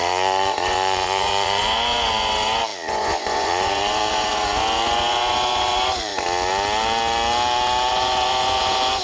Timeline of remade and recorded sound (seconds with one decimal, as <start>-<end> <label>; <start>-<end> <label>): 0.0-6.1 remade; 6.1-7.9 recorded; 7.9-9.0 remade